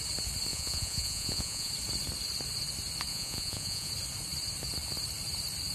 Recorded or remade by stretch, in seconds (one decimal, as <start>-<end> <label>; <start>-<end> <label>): 0.0-0.5 recorded; 0.5-1.7 remade; 1.7-3.1 recorded; 3.1-3.9 remade; 3.9-5.7 recorded